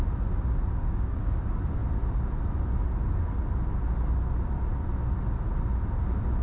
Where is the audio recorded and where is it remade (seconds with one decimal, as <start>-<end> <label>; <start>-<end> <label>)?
0.0-0.8 recorded; 0.8-1.4 remade; 1.4-6.4 recorded